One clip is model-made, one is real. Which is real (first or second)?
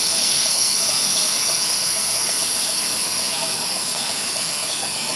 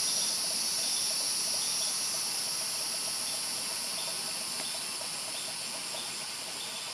second